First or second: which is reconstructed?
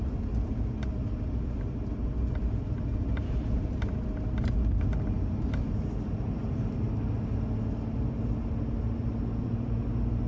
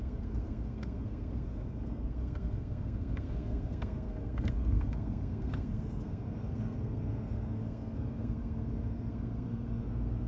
second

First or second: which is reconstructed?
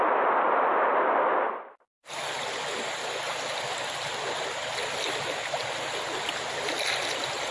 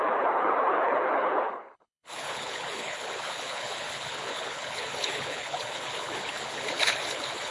second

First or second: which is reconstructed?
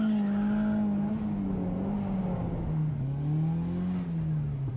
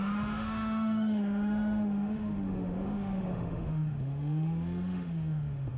second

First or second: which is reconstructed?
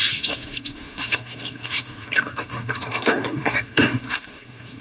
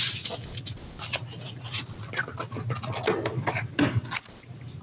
first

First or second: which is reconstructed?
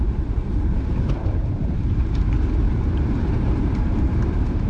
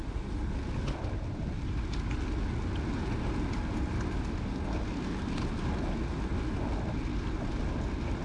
first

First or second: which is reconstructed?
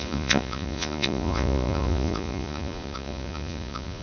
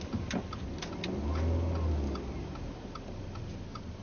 first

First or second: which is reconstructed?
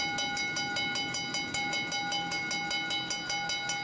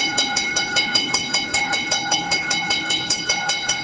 second